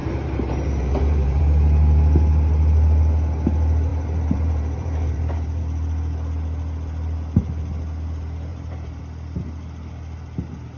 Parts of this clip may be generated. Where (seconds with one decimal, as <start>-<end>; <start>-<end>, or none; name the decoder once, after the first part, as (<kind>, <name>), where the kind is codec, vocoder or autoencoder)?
0.0-1.4 (vocoder, BigVGAN v2); 3.9-5.6; 8.5-9.0